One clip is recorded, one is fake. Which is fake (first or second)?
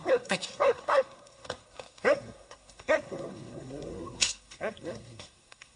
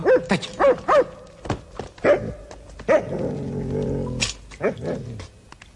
first